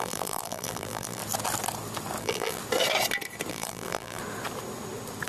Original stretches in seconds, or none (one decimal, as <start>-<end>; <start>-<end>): 1.2-2.2; 2.6-3.5; 4.2-5.3